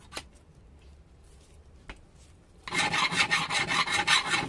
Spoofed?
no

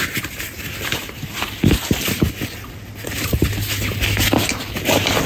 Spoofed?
no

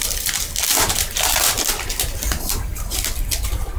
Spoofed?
no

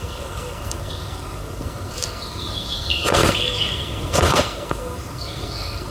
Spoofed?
yes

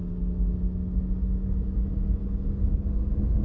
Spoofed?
no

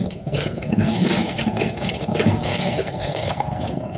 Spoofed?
yes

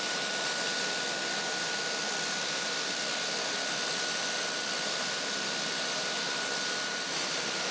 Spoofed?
no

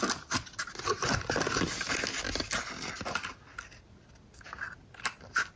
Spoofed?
no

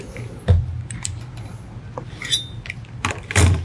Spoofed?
no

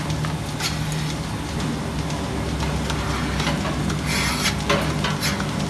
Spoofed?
no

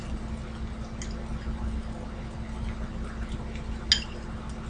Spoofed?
no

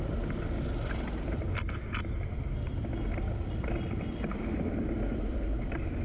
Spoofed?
no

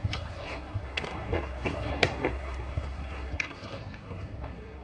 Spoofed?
yes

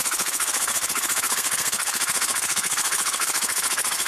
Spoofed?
yes